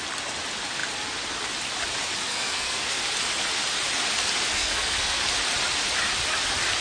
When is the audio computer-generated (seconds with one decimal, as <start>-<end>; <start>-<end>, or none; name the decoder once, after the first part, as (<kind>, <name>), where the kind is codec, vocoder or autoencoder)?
2.3-3.0 (codec, SNAC); 4.5-5.2